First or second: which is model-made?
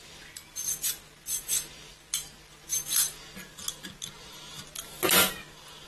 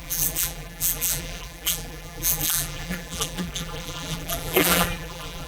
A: second